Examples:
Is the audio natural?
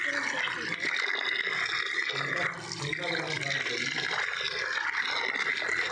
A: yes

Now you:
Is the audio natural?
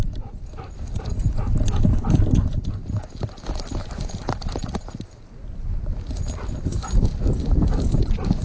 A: yes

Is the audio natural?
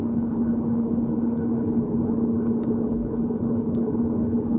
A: no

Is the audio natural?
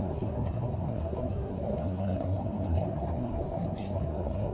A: no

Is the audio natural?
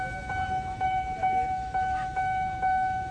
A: no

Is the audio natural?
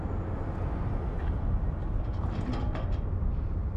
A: yes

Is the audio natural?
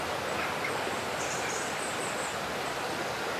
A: yes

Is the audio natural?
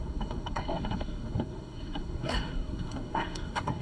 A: no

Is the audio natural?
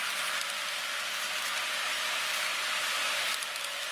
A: yes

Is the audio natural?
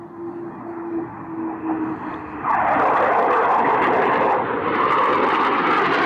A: yes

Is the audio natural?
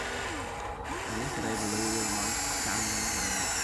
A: yes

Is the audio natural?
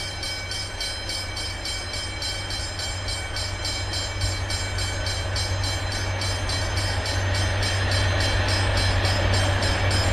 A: yes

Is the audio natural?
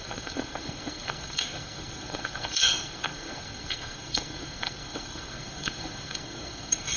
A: no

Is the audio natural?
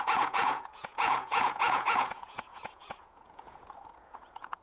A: no